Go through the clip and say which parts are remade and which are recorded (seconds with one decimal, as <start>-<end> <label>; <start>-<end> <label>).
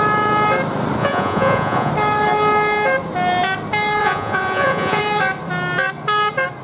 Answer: 0.0-1.0 recorded; 1.0-1.9 remade; 1.9-4.0 recorded; 4.0-5.0 remade; 5.0-6.6 recorded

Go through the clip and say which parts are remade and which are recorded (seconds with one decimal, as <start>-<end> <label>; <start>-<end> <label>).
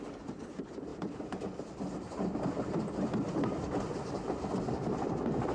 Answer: 0.0-5.5 recorded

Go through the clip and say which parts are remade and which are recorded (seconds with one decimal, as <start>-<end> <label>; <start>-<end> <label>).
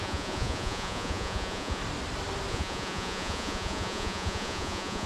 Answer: 0.0-1.8 remade; 1.8-2.5 recorded; 2.5-5.1 remade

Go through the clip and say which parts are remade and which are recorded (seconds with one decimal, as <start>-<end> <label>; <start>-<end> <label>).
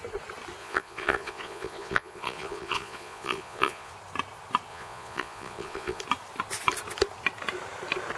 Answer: 0.0-0.6 recorded; 0.6-3.9 remade; 3.9-4.7 recorded; 4.7-6.0 remade; 6.0-8.2 recorded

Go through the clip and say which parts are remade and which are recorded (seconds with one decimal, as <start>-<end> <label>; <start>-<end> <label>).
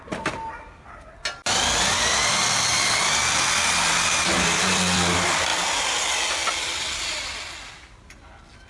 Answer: 0.0-8.7 recorded